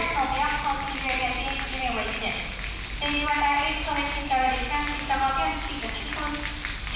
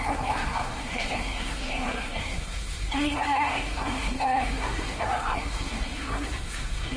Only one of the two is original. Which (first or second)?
first